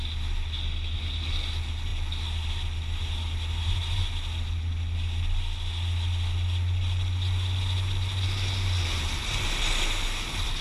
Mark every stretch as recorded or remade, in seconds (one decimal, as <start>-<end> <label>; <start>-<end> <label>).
0.0-10.6 recorded